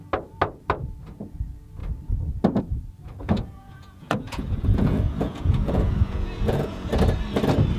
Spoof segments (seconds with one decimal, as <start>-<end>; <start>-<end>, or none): 3.2-6.9